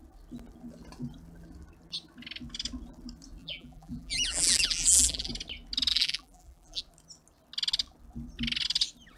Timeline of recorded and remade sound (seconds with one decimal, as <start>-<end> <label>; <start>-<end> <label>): 0.0-3.4 recorded; 3.4-5.3 remade; 5.3-5.9 recorded; 5.9-6.8 remade; 6.8-9.2 recorded